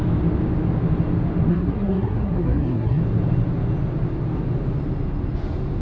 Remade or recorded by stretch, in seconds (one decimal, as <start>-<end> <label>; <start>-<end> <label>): 0.0-1.5 recorded; 1.5-3.0 remade; 3.0-5.8 recorded